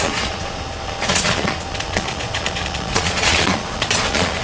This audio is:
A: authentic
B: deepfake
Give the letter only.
B